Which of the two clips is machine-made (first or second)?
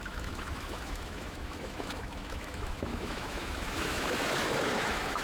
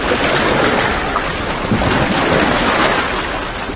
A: first